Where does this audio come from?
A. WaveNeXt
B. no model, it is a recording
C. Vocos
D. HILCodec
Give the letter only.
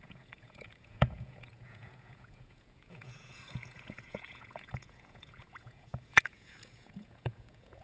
C